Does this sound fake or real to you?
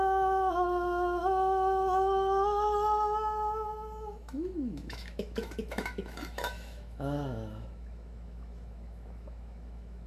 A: fake